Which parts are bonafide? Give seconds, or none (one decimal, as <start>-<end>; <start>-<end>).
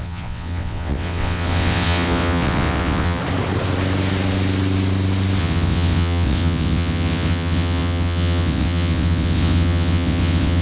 3.2-5.4